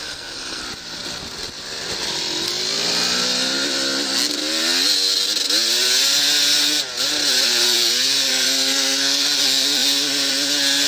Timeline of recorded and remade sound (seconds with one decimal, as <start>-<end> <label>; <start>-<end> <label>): 0.0-0.6 remade; 0.6-8.3 recorded; 8.3-9.4 remade; 9.4-10.9 recorded